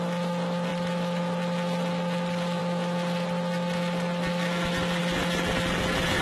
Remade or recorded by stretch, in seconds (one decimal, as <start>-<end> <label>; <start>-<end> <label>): 0.0-6.2 recorded